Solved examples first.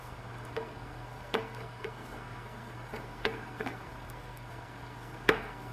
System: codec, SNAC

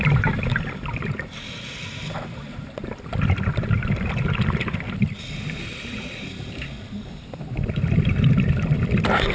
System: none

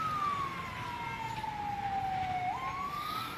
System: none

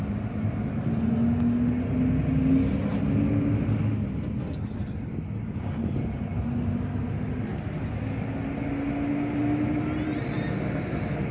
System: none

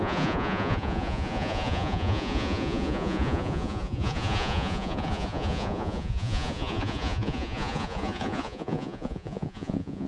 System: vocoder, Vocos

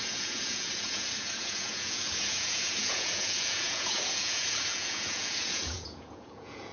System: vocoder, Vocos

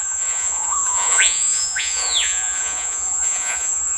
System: vocoder, Vocos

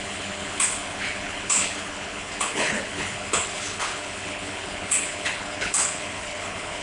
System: codec, HILCodec